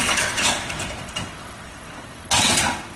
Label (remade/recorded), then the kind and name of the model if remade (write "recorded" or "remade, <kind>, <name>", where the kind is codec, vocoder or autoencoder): remade, vocoder, WaveNeXt